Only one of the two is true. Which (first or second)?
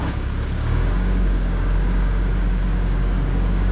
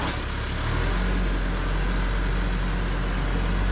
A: second